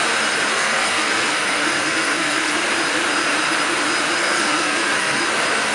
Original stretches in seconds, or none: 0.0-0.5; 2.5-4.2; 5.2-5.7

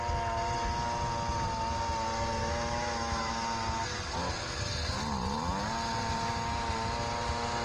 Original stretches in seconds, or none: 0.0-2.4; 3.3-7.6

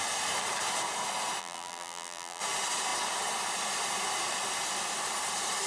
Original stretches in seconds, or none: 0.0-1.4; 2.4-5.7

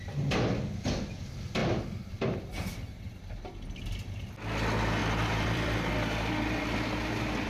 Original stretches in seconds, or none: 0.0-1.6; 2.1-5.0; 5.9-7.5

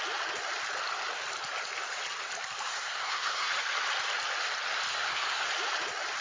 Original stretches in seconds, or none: 0.0-2.7; 3.5-4.9; 5.5-6.2